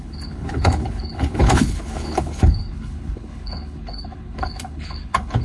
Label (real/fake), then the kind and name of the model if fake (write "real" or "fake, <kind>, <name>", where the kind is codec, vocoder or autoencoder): fake, codec, HILCodec